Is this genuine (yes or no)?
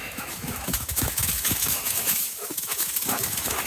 no